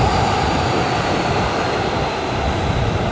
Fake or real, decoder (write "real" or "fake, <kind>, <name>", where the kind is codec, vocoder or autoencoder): real